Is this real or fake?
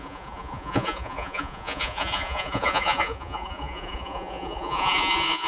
fake